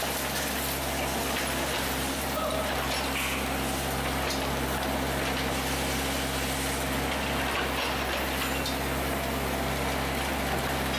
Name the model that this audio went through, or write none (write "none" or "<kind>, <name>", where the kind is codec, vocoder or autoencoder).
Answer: none